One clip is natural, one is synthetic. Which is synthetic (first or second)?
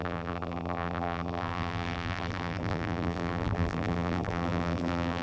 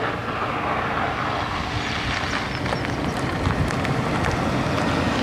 first